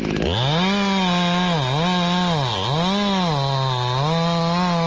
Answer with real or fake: real